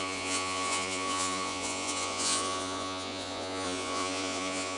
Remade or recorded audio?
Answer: remade